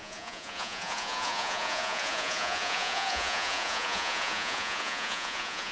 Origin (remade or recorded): remade